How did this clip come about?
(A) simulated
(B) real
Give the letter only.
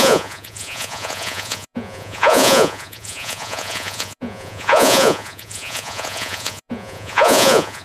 A